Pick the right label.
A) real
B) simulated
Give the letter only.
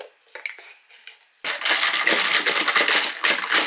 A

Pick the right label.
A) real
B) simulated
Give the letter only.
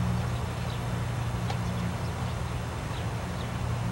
A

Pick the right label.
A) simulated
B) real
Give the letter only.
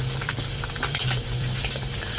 A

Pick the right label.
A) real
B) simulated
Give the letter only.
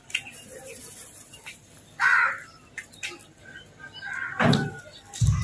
A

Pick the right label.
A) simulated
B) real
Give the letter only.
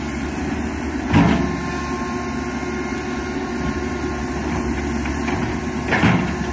B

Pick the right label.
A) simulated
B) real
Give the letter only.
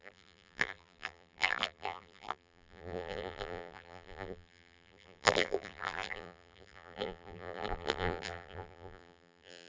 A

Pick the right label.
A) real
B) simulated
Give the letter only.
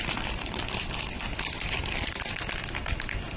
A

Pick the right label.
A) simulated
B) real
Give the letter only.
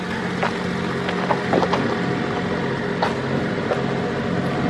B